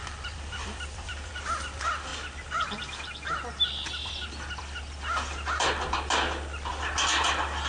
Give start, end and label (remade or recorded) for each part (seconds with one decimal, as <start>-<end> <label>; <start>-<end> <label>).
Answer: 0.0-1.3 remade; 1.3-7.7 recorded